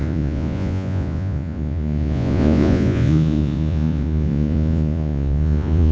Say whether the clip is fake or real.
fake